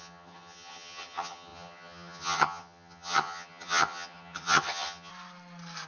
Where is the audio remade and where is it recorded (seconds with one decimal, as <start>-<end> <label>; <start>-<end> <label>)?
0.0-5.1 remade; 5.1-5.9 recorded